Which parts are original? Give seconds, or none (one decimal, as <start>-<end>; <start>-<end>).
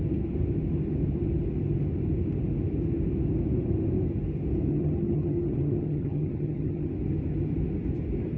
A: 0.0-4.7; 6.9-8.4